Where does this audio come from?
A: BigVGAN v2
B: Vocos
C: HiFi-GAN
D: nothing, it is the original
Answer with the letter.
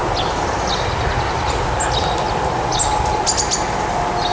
D